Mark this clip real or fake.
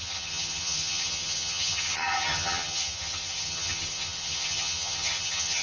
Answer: fake